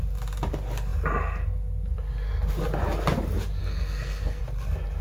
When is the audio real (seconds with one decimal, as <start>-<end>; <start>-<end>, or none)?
0.0-3.6; 4.4-5.0